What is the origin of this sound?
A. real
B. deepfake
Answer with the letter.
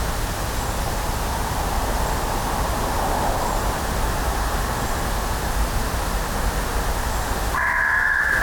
A